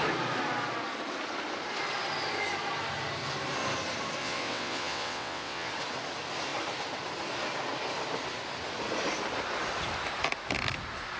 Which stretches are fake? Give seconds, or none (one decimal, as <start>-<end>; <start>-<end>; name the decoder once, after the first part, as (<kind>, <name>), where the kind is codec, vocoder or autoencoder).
4.2-5.7 (vocoder, WaveNeXt)